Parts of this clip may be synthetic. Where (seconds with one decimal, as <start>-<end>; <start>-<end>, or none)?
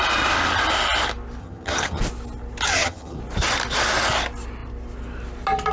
1.4-2.0; 2.7-3.2